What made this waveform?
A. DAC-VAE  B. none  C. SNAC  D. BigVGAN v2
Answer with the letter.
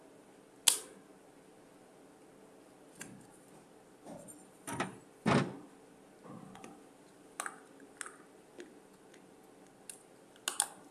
B